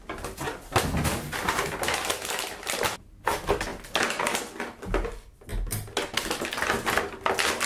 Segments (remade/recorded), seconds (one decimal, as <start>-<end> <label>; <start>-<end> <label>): 0.0-7.7 recorded